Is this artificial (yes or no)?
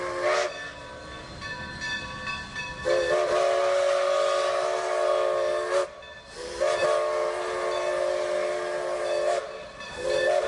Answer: no